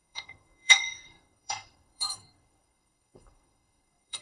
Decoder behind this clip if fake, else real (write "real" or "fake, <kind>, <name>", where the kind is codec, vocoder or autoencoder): fake, codec, SNAC